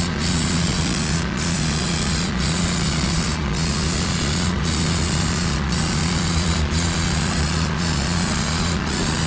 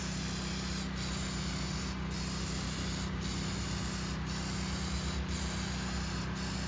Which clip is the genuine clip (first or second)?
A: second